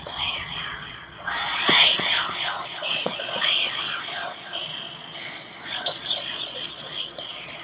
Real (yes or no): no